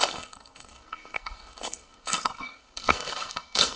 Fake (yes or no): yes